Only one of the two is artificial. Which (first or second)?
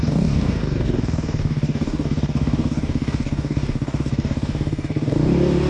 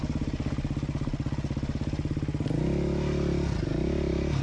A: first